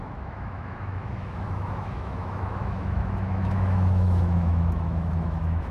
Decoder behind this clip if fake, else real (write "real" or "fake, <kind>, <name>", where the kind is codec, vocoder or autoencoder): fake, autoencoder, DAC-VAE